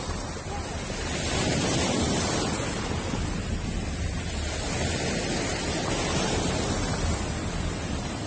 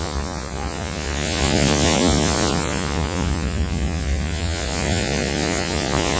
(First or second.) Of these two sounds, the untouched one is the first